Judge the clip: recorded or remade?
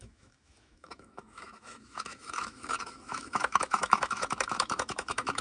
remade